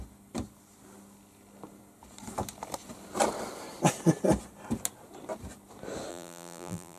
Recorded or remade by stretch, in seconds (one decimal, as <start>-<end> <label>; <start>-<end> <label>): 0.0-6.1 recorded; 6.1-7.0 remade